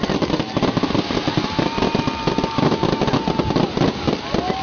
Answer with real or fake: real